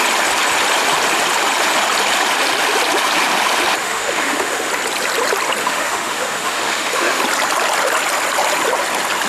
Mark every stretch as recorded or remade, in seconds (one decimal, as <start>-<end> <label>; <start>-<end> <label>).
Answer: 0.0-3.8 recorded; 3.8-4.7 remade; 4.7-5.6 recorded; 5.6-7.2 remade; 7.2-9.3 recorded